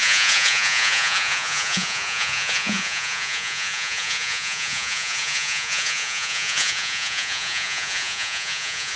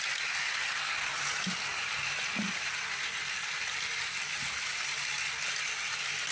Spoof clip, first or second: first